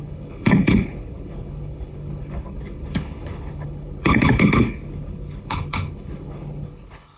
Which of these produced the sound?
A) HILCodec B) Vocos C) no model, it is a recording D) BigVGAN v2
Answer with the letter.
A